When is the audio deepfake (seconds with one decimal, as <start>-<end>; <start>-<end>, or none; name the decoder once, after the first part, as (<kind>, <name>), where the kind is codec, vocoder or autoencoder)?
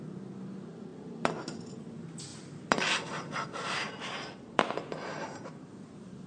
0.9-1.7 (vocoder, BigVGAN v2); 2.3-6.3